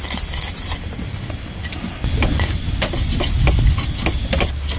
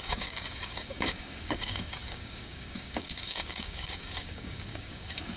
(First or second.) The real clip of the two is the first